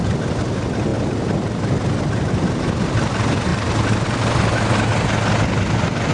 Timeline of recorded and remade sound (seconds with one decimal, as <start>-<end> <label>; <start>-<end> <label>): 0.0-6.1 recorded